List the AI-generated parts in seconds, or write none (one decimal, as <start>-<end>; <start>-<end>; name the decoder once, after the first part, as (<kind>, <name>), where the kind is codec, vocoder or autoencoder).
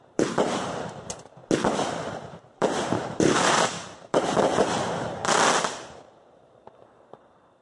0.0-1.4 (vocoder, BigVGAN v2); 2.5-5.2; 6.4-7.6